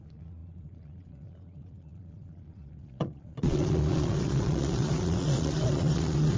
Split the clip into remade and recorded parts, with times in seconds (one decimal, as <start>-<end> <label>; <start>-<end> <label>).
0.0-6.4 remade